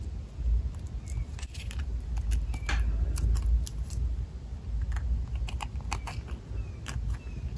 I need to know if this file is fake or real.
real